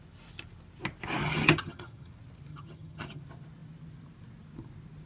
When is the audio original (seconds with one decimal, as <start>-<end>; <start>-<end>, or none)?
0.0-1.2; 2.1-2.5; 3.2-5.0